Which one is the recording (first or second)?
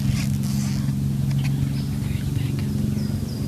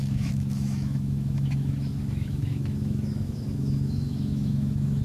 first